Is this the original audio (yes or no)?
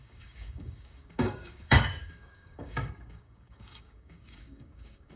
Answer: no